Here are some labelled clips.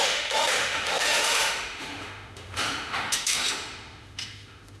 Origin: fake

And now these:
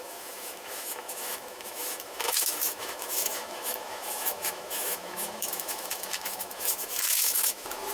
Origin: fake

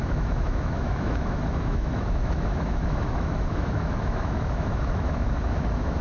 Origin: fake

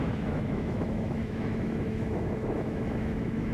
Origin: fake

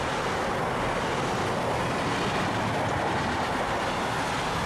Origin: real